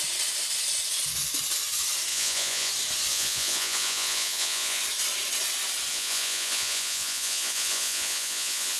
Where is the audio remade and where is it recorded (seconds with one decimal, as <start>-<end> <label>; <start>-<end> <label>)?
0.0-2.1 recorded; 2.1-2.7 remade; 2.7-3.1 recorded; 3.1-4.8 remade; 4.8-5.9 recorded; 5.9-8.8 remade